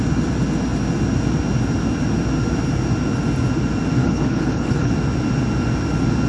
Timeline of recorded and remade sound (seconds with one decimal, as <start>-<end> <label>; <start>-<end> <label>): 0.0-4.0 recorded; 4.0-4.9 remade; 4.9-6.3 recorded